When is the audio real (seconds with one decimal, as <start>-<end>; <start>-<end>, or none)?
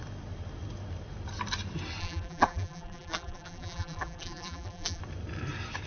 0.0-2.0; 5.0-5.9